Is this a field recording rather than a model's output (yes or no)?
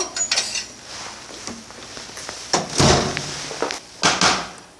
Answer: yes